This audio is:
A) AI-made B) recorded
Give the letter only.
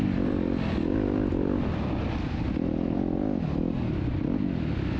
B